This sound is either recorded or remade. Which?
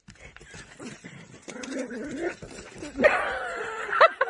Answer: remade